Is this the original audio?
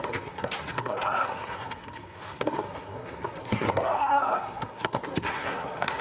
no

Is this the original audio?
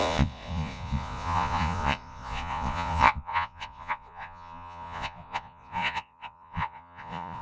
no